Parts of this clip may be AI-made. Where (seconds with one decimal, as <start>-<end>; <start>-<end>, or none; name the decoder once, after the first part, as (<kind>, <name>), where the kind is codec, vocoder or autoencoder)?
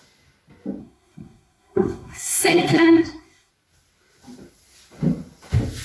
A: 0.8-3.5 (codec, SNAC)